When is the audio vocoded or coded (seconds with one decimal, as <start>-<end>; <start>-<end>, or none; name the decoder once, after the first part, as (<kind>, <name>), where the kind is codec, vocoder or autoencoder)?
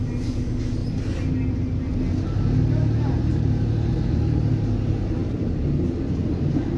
none